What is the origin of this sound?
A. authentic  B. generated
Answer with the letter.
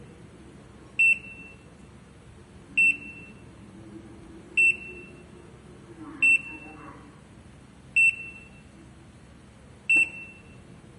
A